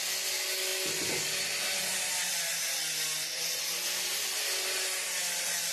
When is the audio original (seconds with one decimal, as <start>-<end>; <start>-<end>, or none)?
0.0-5.7